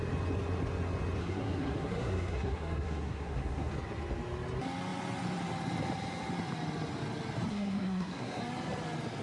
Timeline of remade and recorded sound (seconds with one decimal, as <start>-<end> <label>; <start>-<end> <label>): 0.0-1.2 recorded; 1.2-3.7 remade; 3.7-7.5 recorded; 7.5-8.4 remade; 8.4-9.2 recorded